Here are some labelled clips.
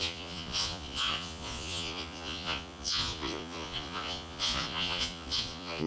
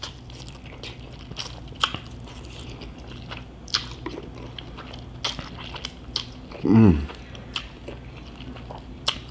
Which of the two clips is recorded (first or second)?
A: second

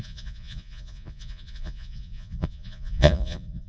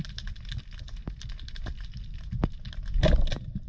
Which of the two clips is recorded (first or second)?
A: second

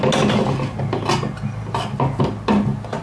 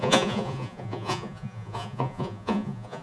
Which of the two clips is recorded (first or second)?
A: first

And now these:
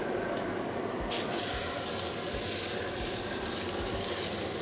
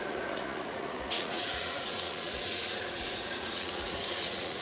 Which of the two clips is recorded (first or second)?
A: first